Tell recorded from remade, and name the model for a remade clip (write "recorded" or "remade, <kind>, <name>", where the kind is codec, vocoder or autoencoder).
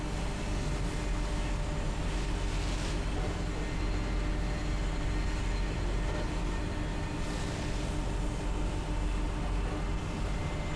recorded